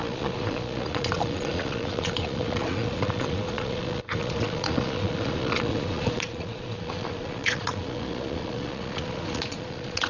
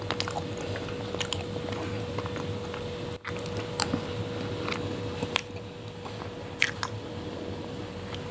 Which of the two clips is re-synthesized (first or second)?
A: first